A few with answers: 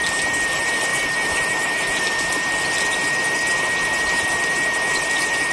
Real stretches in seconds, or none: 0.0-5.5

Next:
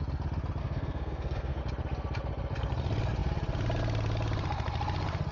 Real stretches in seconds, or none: 0.0-0.6; 1.6-5.3

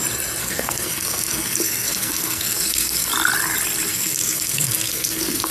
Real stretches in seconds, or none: 0.0-0.4; 3.1-3.9

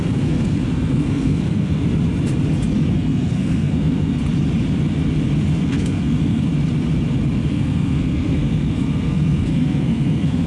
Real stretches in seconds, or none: 1.8-2.9; 4.2-5.5; 6.5-7.5

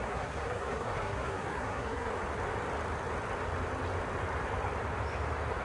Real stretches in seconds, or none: 2.1-5.6

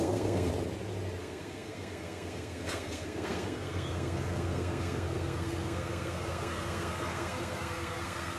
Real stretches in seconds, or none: 0.5-1.2

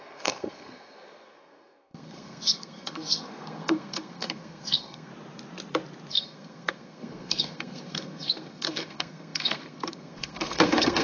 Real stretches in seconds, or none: 5.1-6.1